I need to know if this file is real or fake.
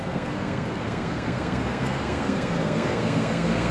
fake